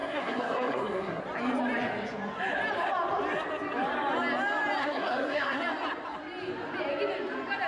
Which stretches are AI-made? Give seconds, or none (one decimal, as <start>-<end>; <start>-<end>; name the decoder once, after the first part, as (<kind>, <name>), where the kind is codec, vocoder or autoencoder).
0.0-1.2 (codec, SNAC); 4.8-5.6